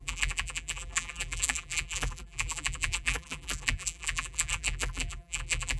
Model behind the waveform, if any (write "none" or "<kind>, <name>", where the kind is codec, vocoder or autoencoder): vocoder, BigVGAN v2